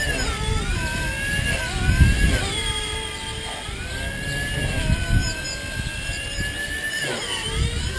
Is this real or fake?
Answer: real